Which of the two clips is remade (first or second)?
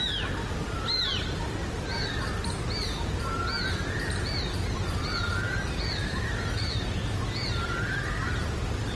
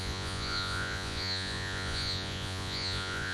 second